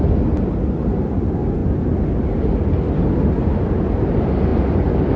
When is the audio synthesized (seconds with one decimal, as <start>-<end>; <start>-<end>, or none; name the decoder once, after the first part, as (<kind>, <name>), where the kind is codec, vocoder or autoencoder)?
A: 4.5-5.2 (vocoder, BigVGAN v2)